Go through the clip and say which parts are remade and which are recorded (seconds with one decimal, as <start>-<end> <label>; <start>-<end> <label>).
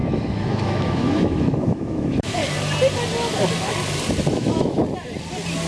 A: 0.0-2.4 remade; 2.4-4.3 recorded; 4.3-4.8 remade; 4.8-5.7 recorded